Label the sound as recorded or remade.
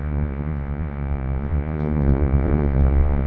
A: remade